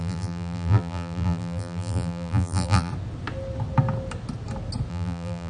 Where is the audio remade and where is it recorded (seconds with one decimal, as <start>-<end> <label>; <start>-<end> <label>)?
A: 0.0-2.9 remade; 2.9-4.9 recorded; 4.9-5.5 remade